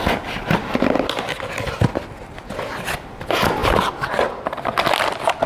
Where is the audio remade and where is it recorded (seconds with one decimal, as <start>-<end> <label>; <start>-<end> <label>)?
0.0-5.5 recorded